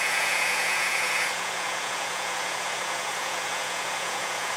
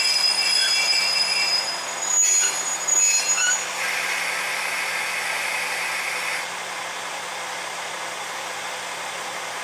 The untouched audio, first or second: second